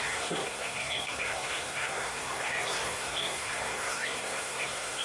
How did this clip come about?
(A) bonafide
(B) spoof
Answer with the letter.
B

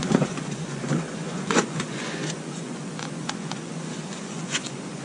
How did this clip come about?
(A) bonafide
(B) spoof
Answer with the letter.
B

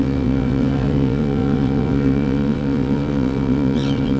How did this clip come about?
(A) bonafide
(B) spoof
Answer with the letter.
B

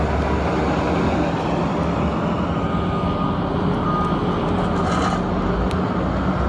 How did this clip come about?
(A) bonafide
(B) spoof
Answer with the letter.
A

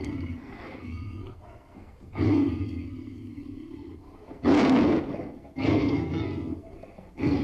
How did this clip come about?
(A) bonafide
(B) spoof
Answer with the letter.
B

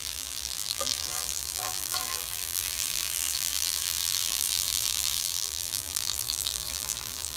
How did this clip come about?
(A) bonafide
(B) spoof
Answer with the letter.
B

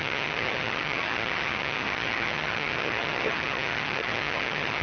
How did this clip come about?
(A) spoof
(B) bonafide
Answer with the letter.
A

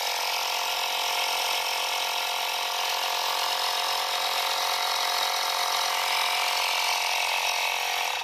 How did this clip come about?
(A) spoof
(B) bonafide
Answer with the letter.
B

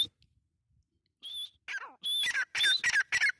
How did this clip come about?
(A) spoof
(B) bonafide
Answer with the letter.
B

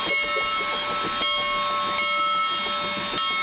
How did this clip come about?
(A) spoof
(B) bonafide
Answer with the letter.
B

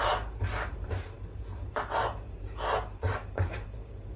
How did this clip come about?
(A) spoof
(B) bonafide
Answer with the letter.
A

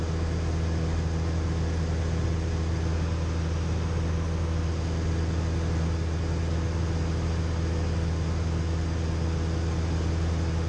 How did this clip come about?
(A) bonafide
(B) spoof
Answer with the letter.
A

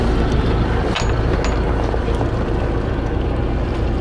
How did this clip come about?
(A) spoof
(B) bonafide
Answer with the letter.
B